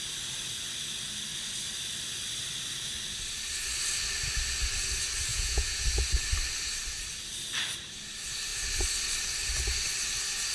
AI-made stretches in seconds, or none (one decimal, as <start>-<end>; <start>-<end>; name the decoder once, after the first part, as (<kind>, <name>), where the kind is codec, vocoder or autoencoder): 5.3-5.8 (vocoder, Vocos)